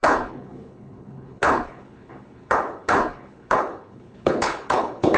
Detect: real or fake fake